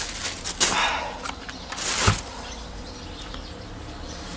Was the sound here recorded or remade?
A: recorded